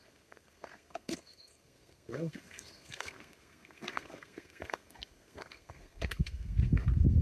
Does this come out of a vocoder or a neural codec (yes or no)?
yes